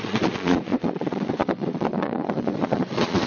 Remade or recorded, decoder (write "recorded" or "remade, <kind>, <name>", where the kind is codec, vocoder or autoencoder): remade, vocoder, Vocos